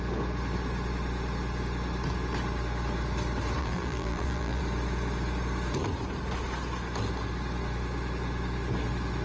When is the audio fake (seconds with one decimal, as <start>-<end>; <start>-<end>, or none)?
3.6-4.6